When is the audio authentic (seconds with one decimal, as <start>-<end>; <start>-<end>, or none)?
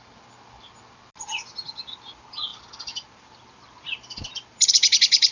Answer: 0.0-5.3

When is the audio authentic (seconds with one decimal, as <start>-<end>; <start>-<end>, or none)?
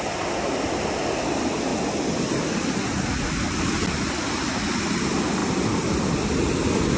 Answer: 0.0-1.7; 5.0-7.0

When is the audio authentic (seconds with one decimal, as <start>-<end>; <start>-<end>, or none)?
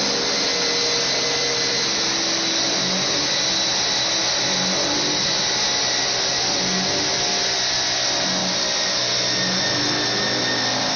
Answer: 0.0-11.0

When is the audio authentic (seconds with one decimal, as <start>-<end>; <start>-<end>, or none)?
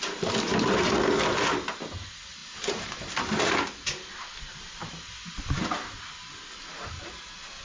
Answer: 0.0-2.4; 3.6-7.6